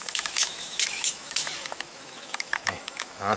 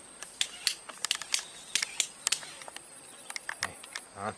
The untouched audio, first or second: second